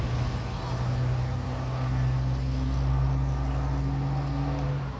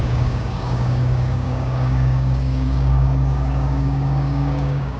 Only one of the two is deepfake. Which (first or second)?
second